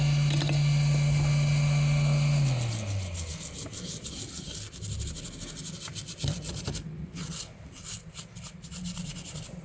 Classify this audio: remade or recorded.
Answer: recorded